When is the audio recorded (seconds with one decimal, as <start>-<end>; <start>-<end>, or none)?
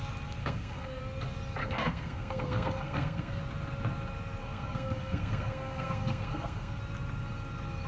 0.0-0.4; 1.0-1.6; 3.4-4.4; 6.8-7.9